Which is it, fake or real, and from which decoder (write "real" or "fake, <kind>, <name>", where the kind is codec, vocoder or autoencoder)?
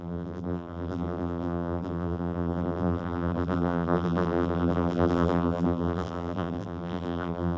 fake, vocoder, BigVGAN v2